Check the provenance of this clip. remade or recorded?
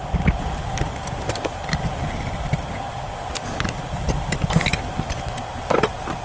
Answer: recorded